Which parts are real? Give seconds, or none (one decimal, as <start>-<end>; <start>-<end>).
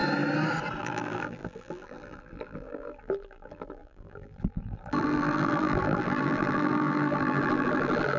0.0-0.8